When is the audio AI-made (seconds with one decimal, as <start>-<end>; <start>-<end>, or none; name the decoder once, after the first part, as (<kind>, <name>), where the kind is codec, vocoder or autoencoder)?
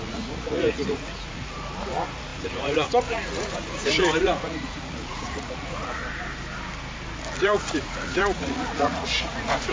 0.0-6.0 (vocoder, Vocos); 7.4-9.7